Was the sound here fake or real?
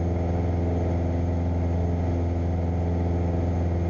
real